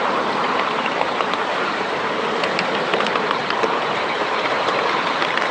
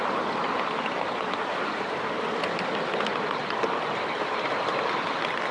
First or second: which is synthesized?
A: first